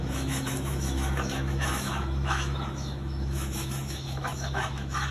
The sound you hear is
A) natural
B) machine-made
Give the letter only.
B